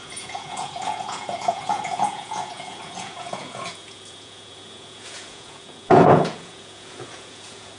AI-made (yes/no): yes